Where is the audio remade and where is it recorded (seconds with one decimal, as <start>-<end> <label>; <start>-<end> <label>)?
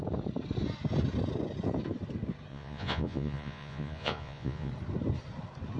0.0-2.5 recorded; 2.5-4.7 remade; 4.7-5.8 recorded